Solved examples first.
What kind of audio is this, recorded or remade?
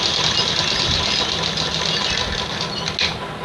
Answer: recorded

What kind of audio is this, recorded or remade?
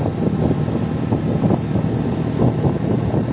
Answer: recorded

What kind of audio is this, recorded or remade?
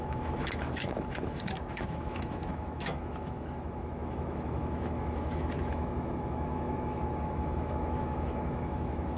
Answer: remade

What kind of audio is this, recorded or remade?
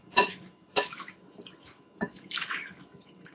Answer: remade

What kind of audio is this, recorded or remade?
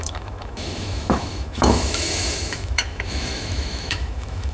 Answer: remade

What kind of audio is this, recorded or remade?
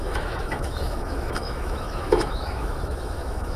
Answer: remade